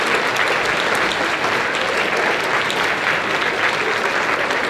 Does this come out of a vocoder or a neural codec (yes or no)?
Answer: no